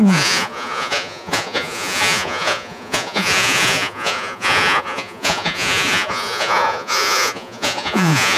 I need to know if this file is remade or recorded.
remade